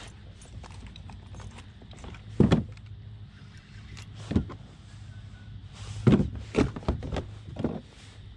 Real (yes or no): yes